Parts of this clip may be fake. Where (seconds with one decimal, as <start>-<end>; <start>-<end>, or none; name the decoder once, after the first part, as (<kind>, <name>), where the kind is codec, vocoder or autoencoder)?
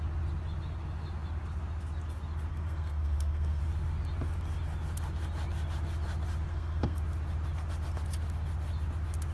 2.5-3.6 (codec, SNAC); 6.5-7.0